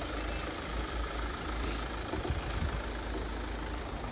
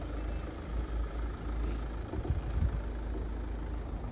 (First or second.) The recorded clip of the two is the second